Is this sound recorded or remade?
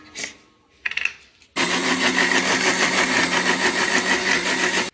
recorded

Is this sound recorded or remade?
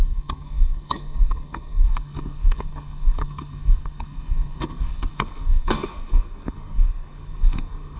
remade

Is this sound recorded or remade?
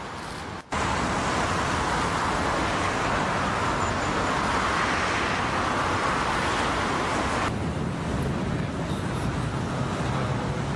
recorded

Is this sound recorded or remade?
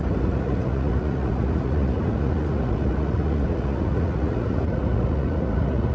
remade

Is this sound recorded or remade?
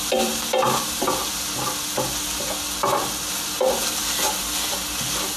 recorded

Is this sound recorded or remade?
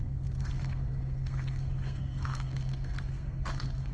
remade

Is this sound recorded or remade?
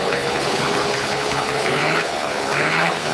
remade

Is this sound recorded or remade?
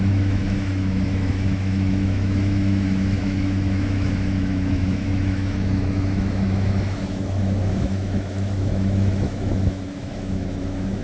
remade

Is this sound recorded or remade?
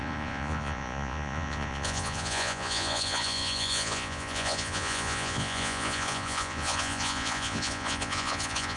remade